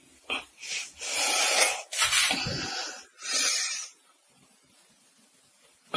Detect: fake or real real